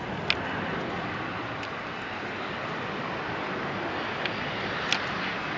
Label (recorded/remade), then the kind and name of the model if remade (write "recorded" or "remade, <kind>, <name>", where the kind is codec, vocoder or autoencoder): recorded